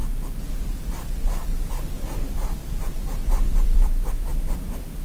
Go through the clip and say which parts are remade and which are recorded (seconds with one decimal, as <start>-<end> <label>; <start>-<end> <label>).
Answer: 0.0-0.5 recorded; 0.5-1.5 remade; 1.5-2.2 recorded; 2.2-5.0 remade